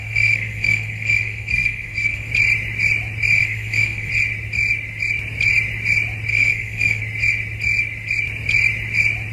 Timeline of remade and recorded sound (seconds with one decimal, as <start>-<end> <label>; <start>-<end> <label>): 0.0-2.3 remade; 2.3-3.4 recorded; 3.4-4.1 remade; 4.1-6.3 recorded; 6.3-7.0 remade; 7.0-9.3 recorded